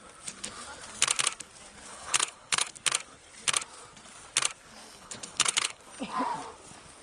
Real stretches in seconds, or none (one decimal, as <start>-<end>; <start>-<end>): 0.0-1.9; 2.7-4.8; 5.8-7.0